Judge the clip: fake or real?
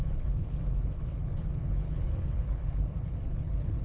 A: fake